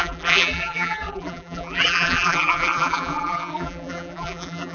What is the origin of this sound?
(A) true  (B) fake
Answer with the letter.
B